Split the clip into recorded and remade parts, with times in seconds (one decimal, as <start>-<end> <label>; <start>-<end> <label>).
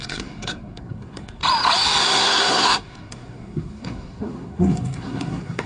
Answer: 0.0-1.4 remade; 1.4-2.0 recorded; 2.0-5.7 remade